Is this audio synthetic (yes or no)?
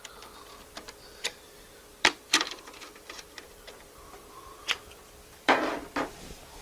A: yes